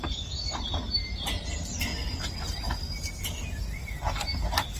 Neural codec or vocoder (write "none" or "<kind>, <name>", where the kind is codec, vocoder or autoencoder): none